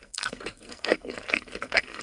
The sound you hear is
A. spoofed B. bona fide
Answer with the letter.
A